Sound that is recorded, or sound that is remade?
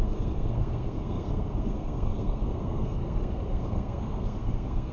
remade